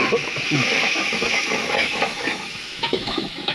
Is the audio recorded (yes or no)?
no